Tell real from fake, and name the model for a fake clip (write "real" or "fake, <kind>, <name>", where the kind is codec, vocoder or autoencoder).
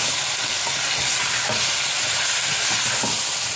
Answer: real